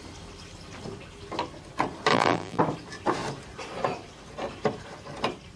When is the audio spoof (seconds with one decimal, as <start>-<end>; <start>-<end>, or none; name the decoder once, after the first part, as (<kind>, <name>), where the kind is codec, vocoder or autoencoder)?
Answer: 2.1-2.6 (vocoder, BigVGAN v2)